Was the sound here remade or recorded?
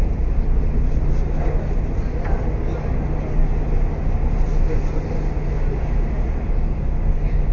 recorded